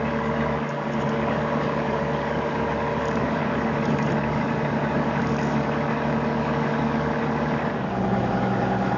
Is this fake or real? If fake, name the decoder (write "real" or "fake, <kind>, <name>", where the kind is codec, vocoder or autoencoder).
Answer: fake, codec, DAC